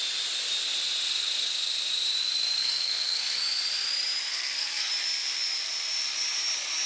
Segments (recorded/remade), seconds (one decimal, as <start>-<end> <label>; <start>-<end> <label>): 0.0-2.6 recorded; 2.6-3.4 remade; 3.4-4.3 recorded; 4.3-4.9 remade; 4.9-6.9 recorded